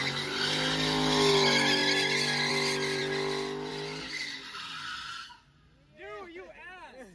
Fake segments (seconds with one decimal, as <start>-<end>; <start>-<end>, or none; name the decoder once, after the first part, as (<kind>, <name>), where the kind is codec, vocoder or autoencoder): none

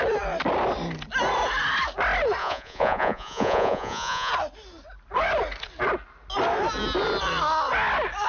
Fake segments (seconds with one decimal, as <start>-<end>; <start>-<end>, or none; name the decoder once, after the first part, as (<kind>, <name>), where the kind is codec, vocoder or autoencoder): 2.4-4.3 (vocoder, Vocos)

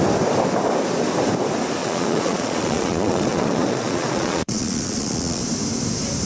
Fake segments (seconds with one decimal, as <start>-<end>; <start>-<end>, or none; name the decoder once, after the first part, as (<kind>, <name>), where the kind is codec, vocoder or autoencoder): 1.8-5.4 (vocoder, Vocos)

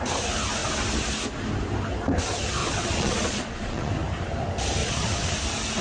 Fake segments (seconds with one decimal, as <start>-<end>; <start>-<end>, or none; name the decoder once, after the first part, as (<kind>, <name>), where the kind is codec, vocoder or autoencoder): 2.6-3.9 (vocoder, Vocos); 4.8-5.3